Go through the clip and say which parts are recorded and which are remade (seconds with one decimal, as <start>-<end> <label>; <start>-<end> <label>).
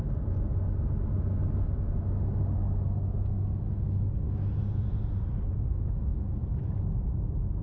0.0-0.5 remade; 0.5-4.6 recorded; 4.6-6.1 remade; 6.1-7.6 recorded